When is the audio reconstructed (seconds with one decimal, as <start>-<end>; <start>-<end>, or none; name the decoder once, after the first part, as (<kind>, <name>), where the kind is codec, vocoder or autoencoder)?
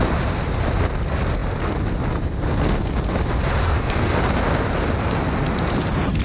3.6-4.2 (codec, SNAC)